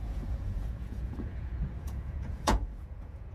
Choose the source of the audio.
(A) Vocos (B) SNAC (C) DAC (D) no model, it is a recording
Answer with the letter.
A